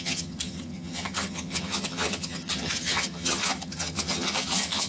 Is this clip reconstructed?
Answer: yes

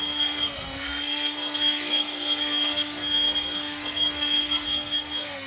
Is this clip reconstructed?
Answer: yes